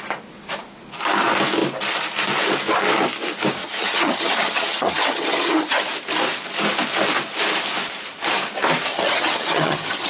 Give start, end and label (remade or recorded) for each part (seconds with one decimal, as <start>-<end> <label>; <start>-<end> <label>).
0.0-3.6 recorded; 3.6-5.8 remade; 5.8-8.9 recorded; 8.9-10.1 remade